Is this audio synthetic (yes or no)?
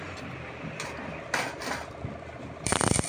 no